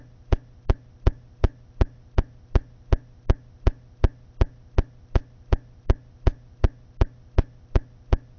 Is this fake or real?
real